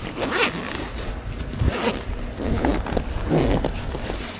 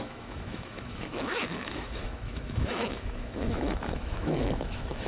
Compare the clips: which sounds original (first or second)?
first